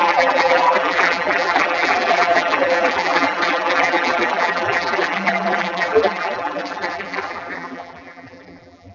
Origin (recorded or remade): remade